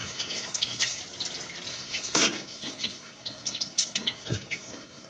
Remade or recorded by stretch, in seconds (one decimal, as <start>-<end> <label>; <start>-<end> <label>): 0.0-1.0 remade; 1.0-1.7 recorded; 1.7-5.1 remade